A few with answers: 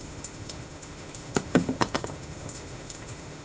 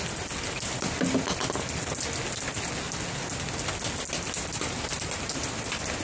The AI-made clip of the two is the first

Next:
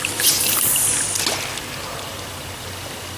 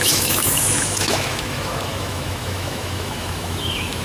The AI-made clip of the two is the second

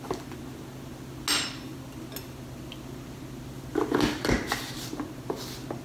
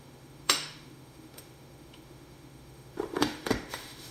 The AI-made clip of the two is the second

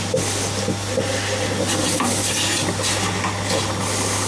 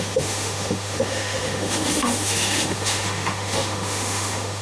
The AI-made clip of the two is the second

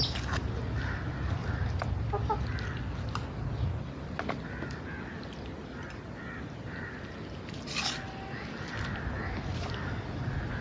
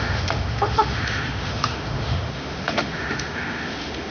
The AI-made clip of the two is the second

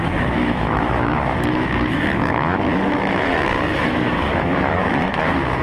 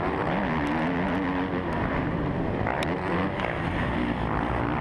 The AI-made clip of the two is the first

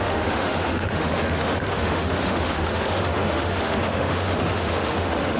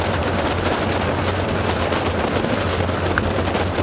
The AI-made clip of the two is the first